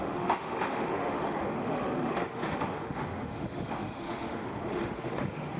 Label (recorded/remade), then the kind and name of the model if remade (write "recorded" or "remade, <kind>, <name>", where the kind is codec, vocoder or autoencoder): remade, autoencoder, DAC-VAE